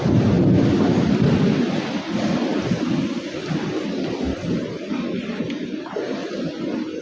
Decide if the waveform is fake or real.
real